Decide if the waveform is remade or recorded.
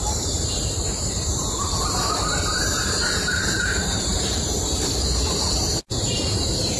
remade